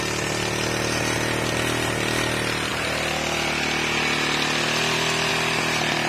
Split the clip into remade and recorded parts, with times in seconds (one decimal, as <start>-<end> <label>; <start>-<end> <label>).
0.0-6.1 recorded